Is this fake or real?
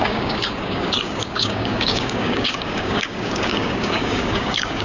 fake